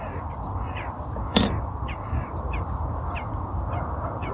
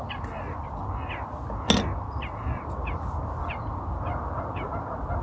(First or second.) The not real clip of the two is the first